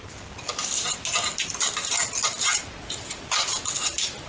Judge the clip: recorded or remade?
recorded